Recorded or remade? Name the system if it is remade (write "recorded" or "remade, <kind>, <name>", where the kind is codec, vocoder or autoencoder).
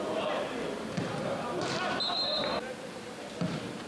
recorded